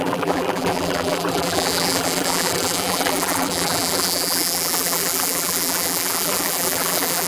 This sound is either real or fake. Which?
fake